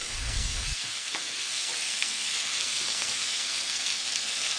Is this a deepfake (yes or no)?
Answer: yes